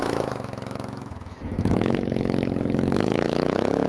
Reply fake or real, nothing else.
fake